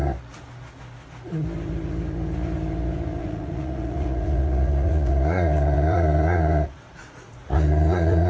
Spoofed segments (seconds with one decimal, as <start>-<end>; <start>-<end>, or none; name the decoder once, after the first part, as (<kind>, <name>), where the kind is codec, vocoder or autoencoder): 3.2-8.3 (vocoder, Vocos)